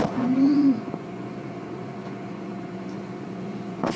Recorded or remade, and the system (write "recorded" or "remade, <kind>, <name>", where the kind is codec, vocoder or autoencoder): remade, vocoder, Vocos